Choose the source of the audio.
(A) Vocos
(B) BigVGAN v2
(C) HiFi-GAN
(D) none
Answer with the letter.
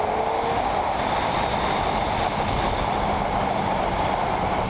D